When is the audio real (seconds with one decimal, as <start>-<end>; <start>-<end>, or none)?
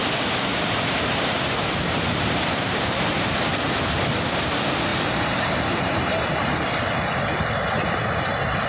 0.0-0.5; 3.3-4.9; 5.9-8.7